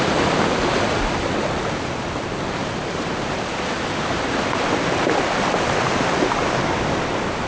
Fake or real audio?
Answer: real